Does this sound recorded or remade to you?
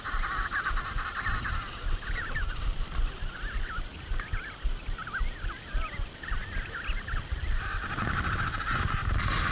recorded